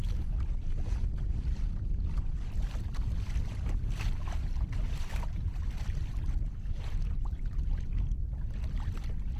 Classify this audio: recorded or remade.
recorded